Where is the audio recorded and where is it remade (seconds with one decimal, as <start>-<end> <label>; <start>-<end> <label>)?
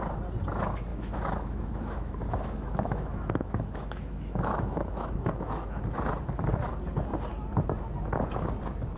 0.0-0.9 recorded; 0.9-5.8 remade; 5.8-9.0 recorded